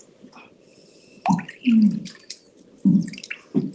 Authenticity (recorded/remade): recorded